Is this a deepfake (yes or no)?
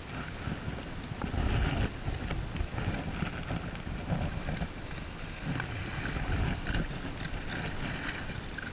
no